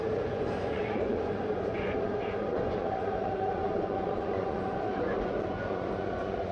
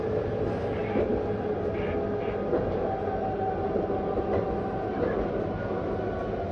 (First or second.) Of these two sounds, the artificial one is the first